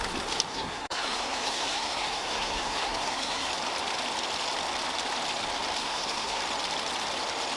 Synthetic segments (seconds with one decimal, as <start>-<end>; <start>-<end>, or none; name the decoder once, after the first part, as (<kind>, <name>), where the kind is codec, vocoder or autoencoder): 0.5-3.5 (codec, SNAC); 5.8-6.4